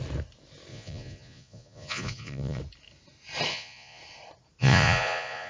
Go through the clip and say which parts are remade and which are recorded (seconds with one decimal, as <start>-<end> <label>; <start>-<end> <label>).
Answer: 0.0-0.7 recorded; 0.7-2.6 remade; 2.6-3.5 recorded; 3.5-4.0 remade; 4.0-4.6 recorded; 4.6-5.5 remade